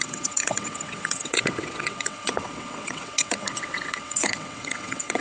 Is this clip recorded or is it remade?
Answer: remade